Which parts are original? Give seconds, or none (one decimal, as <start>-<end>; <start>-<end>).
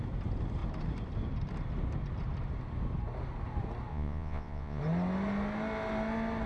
0.0-3.9; 4.8-6.5